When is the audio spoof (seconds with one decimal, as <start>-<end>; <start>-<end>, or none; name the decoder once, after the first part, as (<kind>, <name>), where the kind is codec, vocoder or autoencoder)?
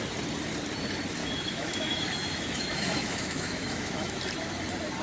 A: 1.2-4.2 (autoencoder, DAC-VAE)